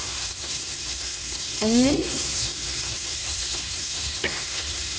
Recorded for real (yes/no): no